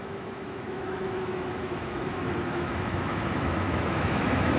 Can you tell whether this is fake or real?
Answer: fake